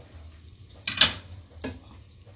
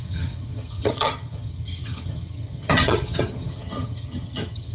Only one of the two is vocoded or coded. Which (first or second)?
second